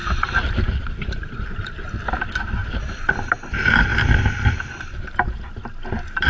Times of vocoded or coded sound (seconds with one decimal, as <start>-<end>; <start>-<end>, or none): none

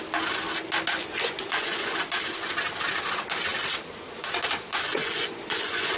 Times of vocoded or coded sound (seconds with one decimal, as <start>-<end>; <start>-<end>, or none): 1.0-2.0; 5.0-6.0

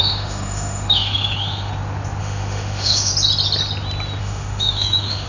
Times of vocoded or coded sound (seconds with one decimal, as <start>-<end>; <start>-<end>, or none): 0.0-1.7; 2.2-3.1; 4.2-5.3

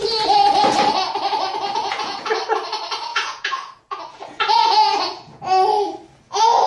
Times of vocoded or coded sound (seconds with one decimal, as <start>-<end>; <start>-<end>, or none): 1.8-2.4; 3.1-5.4

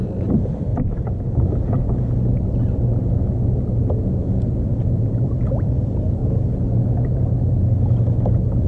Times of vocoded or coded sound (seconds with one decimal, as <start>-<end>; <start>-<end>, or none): 0.0-0.7; 4.5-6.2